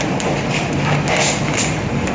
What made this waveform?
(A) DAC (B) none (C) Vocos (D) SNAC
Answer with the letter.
B